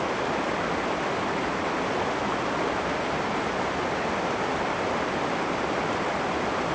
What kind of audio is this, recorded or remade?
recorded